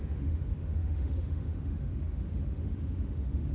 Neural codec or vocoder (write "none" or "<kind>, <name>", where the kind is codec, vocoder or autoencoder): autoencoder, DAC-VAE